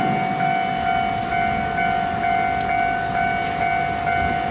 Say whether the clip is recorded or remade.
recorded